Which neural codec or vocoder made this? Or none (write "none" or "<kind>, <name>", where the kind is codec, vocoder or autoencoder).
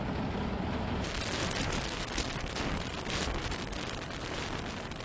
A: none